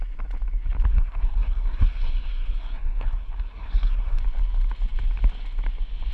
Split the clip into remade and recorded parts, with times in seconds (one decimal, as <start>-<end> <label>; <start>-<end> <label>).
0.0-0.9 recorded; 0.9-4.2 remade; 4.2-6.1 recorded